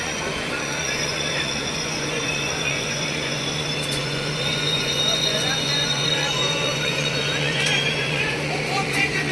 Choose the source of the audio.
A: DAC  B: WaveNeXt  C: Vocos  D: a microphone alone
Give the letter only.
C